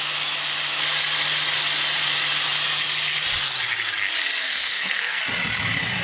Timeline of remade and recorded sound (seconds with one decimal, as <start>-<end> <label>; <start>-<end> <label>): 0.0-4.4 recorded; 4.4-5.2 remade; 5.2-6.0 recorded